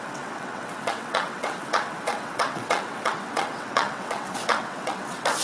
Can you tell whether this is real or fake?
fake